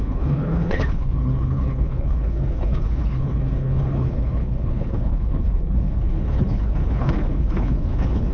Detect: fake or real fake